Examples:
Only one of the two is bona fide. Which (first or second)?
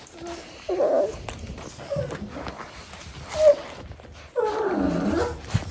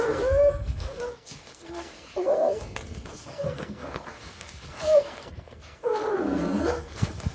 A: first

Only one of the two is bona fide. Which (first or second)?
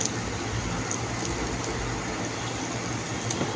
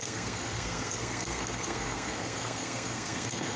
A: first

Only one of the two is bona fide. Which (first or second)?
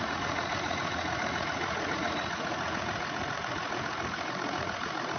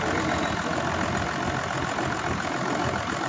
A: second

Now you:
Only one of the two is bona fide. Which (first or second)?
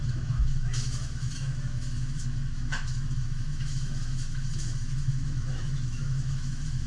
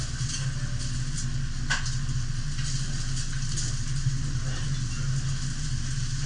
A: second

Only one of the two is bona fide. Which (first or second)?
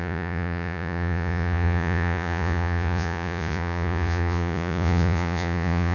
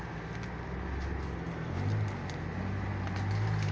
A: second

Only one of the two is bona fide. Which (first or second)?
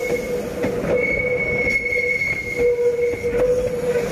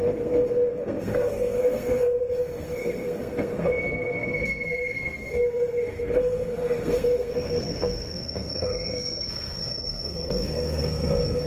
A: first